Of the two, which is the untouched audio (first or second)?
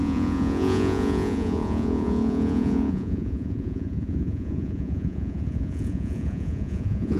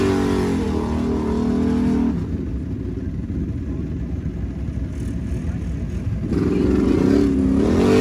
second